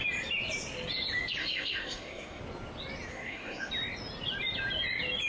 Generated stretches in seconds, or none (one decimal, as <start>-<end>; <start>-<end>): 1.4-2.4; 3.1-3.7